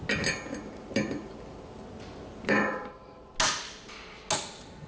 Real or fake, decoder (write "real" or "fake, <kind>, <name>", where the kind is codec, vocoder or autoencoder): real